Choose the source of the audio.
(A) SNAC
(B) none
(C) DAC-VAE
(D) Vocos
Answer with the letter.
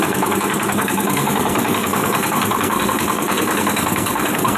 A